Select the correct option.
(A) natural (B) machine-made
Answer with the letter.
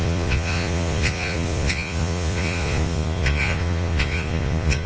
B